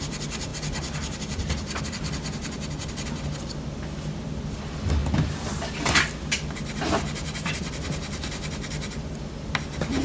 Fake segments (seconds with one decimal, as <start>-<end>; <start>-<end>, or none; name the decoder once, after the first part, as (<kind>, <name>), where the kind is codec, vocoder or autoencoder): none